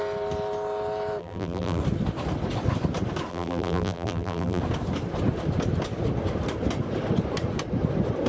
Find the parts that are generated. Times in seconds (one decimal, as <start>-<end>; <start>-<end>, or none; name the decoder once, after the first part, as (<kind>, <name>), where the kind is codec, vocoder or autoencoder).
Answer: 1.2-1.8 (vocoder, BigVGAN v2); 3.3-4.6